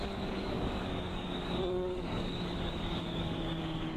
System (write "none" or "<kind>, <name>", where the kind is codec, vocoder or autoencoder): codec, DAC